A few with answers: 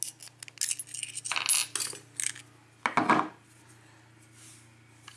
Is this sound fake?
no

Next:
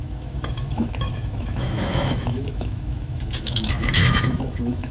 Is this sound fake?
yes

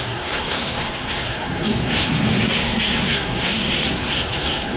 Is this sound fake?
yes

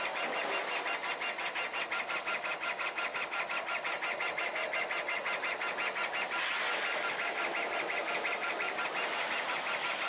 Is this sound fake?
no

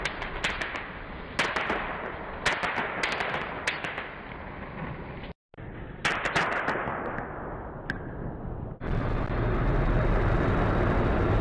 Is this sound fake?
no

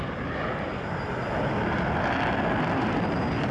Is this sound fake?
no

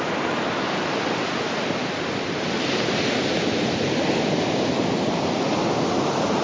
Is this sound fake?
no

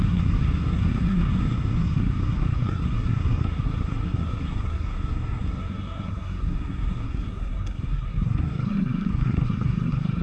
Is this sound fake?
yes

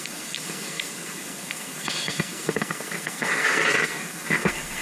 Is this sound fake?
yes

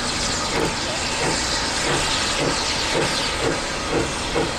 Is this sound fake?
no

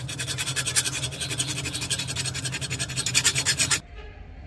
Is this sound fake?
no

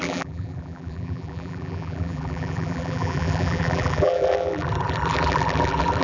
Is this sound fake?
yes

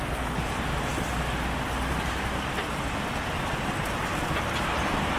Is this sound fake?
no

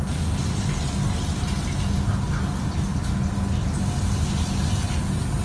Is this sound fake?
no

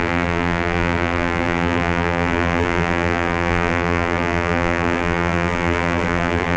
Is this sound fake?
yes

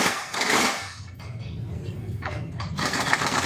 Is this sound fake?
yes